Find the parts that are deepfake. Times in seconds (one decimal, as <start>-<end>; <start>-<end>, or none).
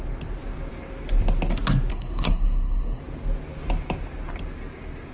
1.9-3.0